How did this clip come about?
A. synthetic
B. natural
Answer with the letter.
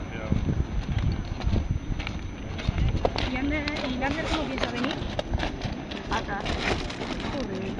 B